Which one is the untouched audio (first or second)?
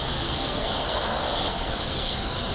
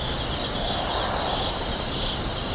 second